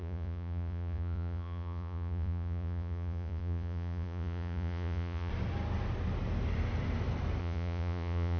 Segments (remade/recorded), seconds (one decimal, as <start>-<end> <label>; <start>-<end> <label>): 0.0-5.3 remade; 5.3-7.4 recorded; 7.4-8.4 remade